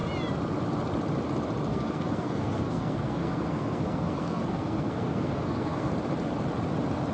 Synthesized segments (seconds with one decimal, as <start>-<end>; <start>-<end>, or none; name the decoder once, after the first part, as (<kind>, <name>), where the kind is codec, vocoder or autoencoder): 1.7-5.9 (codec, SNAC)